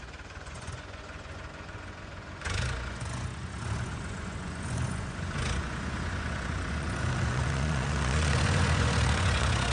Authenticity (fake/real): fake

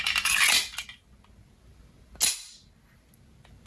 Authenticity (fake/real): real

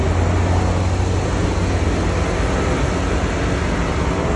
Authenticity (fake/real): real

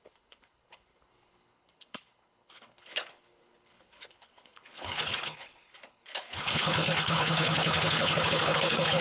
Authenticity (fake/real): fake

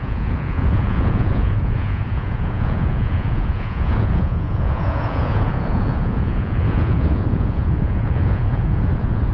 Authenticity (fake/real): fake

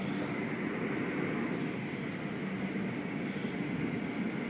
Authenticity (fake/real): real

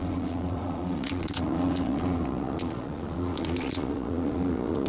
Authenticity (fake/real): fake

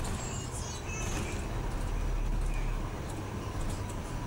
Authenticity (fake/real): real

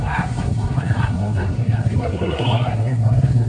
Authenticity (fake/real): fake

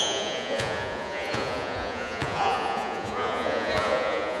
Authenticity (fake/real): fake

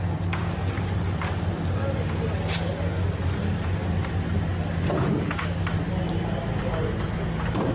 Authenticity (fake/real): real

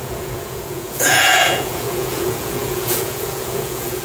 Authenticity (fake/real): fake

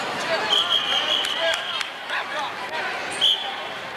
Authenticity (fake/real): real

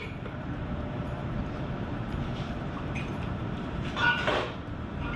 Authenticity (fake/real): fake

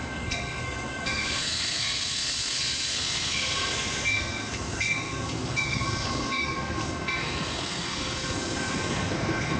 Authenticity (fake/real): fake